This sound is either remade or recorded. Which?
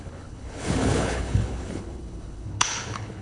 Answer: remade